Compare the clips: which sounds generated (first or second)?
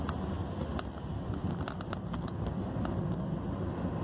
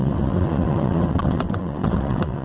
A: second